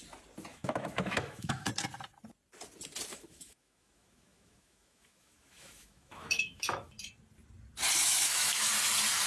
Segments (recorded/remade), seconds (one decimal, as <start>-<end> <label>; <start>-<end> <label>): 0.0-0.5 recorded; 0.5-1.7 remade; 1.7-3.1 recorded; 3.1-6.9 remade; 6.9-8.0 recorded; 8.0-8.7 remade; 8.7-9.3 recorded